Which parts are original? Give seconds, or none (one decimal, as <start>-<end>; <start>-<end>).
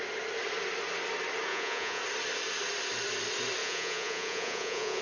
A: 0.0-1.5; 2.0-3.6